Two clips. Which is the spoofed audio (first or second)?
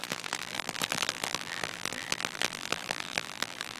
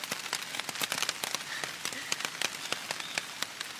first